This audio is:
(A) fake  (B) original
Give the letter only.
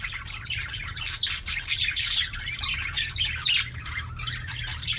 A